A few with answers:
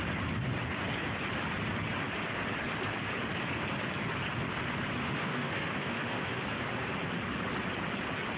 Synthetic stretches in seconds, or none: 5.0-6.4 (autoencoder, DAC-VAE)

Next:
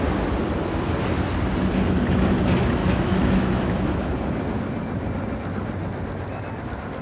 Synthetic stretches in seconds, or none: 2.8-4.1 (autoencoder, DAC-VAE)

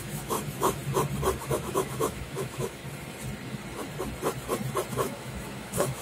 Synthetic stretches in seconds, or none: 0.0-0.8 (autoencoder, DAC-VAE); 1.4-2.8; 4.9-6.0

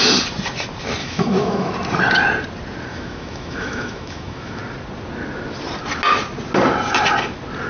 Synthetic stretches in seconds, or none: 1.0-1.7 (autoencoder, DAC-VAE); 2.9-4.6

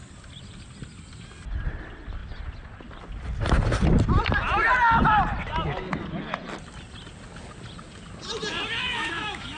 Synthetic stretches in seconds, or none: 8.8-9.6 (autoencoder, DAC-VAE)